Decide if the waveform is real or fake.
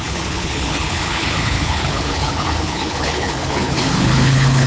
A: fake